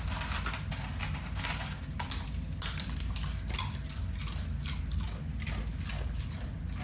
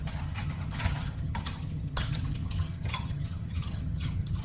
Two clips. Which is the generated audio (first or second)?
second